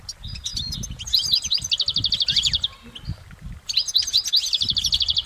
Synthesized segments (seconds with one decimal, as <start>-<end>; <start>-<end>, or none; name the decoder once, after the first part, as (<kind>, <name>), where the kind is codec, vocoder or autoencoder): none